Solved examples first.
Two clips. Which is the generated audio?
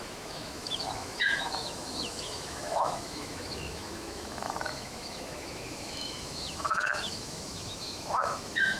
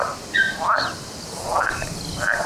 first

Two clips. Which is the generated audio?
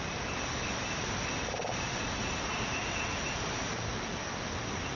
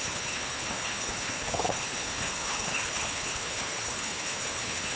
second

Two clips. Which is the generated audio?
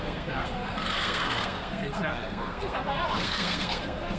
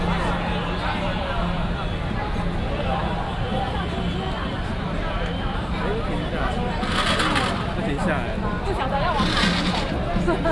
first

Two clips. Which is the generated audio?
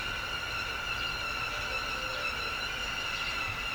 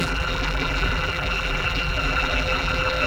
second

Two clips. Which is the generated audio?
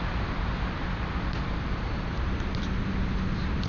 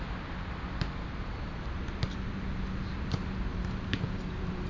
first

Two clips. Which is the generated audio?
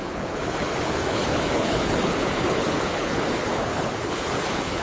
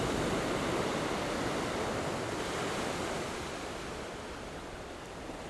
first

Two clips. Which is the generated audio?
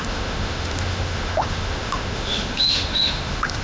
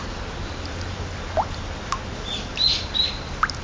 first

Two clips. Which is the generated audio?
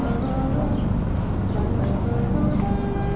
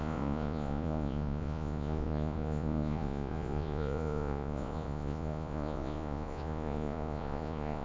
second